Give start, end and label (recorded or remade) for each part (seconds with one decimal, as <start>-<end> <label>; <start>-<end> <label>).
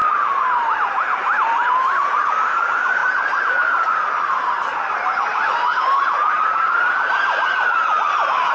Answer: 0.0-2.2 remade; 2.2-3.0 recorded; 3.0-3.5 remade; 3.5-5.7 recorded; 5.7-6.9 remade; 6.9-8.5 recorded